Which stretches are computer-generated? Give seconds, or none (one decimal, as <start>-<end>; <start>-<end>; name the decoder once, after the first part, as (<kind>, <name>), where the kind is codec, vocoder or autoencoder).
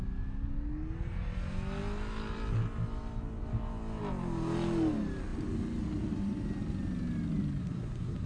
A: 7.6-8.3 (codec, SNAC)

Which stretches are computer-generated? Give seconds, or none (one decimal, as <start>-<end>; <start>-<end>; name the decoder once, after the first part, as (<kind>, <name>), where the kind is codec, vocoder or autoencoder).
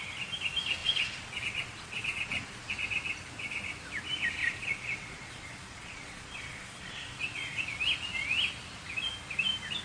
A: 0.8-2.7 (vocoder, Vocos); 4.4-7.6